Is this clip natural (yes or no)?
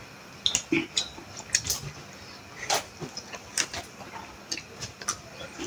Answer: yes